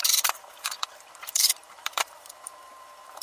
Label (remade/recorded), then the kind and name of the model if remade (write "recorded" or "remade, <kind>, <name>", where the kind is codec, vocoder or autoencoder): remade, vocoder, BigVGAN v2